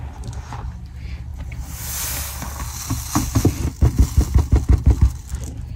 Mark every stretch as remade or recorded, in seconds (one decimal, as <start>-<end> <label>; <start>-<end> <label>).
0.0-5.8 recorded